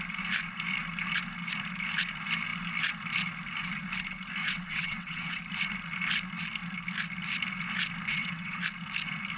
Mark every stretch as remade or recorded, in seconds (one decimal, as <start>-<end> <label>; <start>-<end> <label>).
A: 0.0-4.4 recorded; 4.4-5.4 remade; 5.4-8.1 recorded; 8.1-8.6 remade; 8.6-9.4 recorded